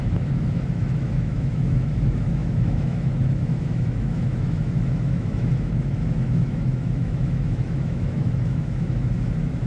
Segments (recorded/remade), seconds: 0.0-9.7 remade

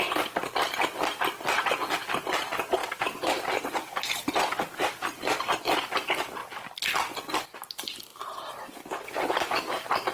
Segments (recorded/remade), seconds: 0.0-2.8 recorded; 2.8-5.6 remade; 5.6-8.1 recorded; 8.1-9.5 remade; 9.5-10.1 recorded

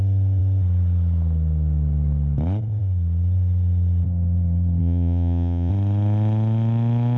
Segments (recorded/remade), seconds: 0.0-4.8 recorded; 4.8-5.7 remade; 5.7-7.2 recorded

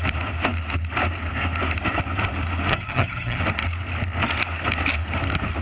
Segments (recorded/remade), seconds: 0.0-2.7 recorded; 2.7-3.4 remade; 3.4-5.6 recorded

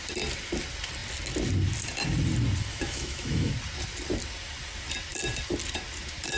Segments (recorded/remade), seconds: 0.0-2.7 recorded; 2.7-3.5 remade; 3.5-6.4 recorded

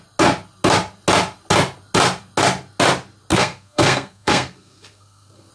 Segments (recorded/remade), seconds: 0.0-3.3 recorded; 3.3-5.5 remade

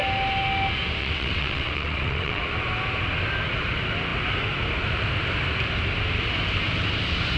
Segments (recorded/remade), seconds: 0.0-1.0 recorded; 1.0-2.4 remade; 2.4-7.4 recorded